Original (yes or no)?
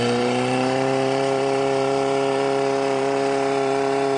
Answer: no